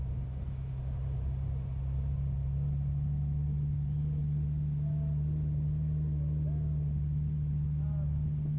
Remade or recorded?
recorded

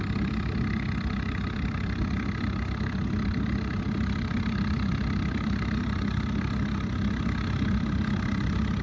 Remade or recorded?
recorded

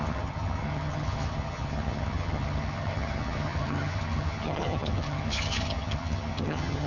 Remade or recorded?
remade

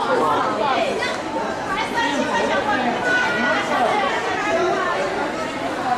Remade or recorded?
remade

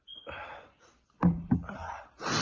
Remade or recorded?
recorded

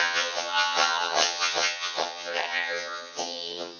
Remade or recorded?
remade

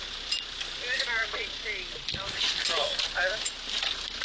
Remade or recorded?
recorded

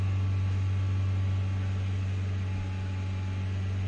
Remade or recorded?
recorded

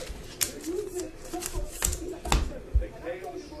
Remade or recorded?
recorded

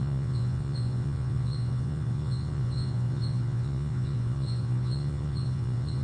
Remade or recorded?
remade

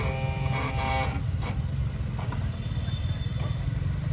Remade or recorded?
recorded